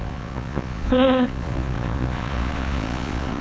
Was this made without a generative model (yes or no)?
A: no